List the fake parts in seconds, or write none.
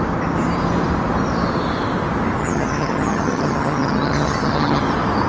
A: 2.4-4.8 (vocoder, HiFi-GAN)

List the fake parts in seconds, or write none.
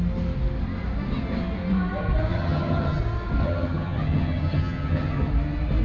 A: 2.3-3.0 (vocoder, HiFi-GAN); 3.4-5.3